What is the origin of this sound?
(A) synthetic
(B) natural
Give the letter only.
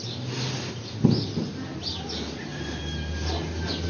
B